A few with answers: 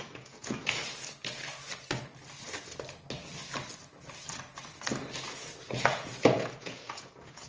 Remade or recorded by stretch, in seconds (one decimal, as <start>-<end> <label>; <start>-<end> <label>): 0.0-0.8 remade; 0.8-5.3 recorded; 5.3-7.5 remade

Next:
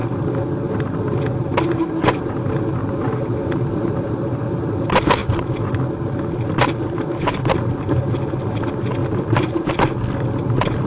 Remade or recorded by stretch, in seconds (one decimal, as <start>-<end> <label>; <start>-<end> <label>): 0.0-2.8 recorded; 2.8-4.8 remade; 4.8-9.0 recorded; 9.0-9.7 remade; 9.7-10.9 recorded

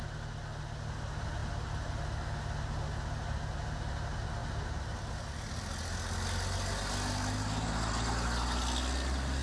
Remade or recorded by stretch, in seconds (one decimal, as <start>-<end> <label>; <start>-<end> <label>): 0.0-4.4 recorded; 4.4-5.1 remade; 5.1-9.4 recorded